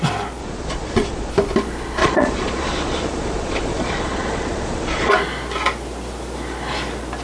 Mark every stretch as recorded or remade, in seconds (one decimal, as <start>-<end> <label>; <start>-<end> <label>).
0.0-0.4 recorded; 0.4-1.3 remade; 1.3-2.0 recorded; 2.0-5.1 remade; 5.1-7.2 recorded